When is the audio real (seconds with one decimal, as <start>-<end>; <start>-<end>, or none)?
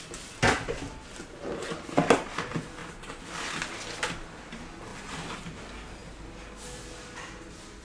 0.0-2.8; 3.3-7.8